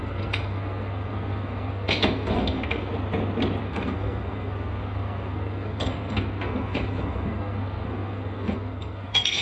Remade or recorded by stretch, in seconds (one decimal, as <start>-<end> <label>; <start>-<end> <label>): 0.0-2.9 remade; 2.9-3.6 recorded; 3.6-9.4 remade